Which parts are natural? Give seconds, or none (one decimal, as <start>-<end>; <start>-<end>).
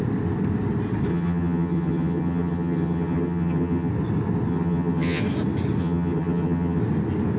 0.0-1.1; 3.9-4.5; 5.2-5.8; 6.8-7.4